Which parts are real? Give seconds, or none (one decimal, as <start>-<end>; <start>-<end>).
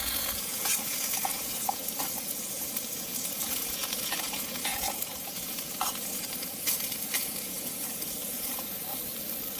8.9-9.6